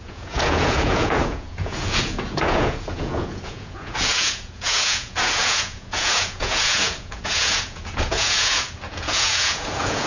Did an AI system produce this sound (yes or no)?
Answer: yes